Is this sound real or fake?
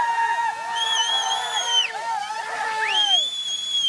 real